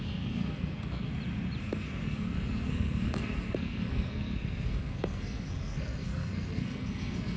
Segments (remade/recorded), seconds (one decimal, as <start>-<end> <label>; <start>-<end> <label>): 0.0-1.1 remade; 1.1-1.6 recorded; 1.6-7.4 remade